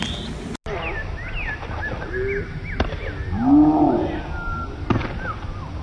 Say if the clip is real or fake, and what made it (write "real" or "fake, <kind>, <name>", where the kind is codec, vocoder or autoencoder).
real